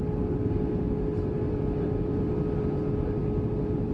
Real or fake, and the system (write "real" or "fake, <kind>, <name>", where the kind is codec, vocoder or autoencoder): real